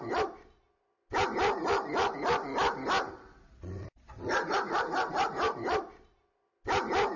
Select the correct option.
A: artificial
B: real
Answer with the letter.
B